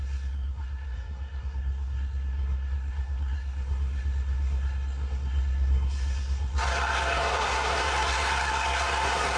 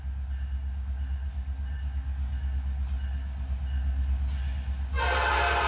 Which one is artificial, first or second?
first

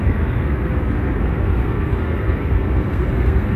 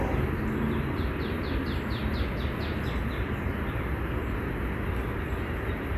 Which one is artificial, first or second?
first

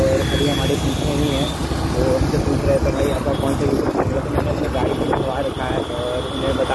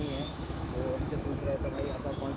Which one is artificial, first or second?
second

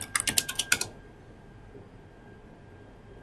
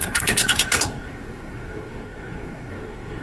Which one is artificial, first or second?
second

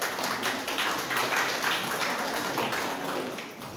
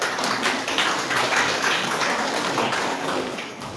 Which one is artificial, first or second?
second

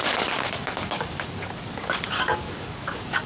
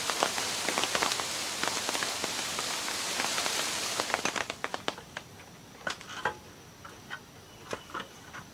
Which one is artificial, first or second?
first